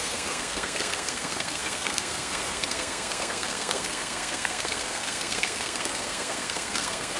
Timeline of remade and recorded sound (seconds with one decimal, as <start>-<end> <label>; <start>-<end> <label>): 0.0-7.2 remade

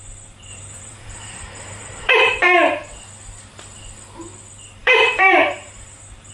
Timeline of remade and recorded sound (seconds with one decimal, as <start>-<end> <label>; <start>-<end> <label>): 0.0-0.5 recorded; 0.5-2.1 remade; 2.1-4.8 recorded; 4.8-6.3 remade